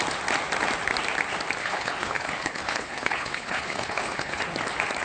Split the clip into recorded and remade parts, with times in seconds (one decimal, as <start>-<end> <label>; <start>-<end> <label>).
0.0-1.6 recorded; 1.6-4.4 remade; 4.4-5.0 recorded